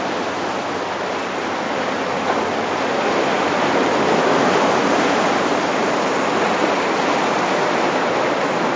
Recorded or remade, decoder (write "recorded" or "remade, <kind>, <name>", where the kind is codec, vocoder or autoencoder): recorded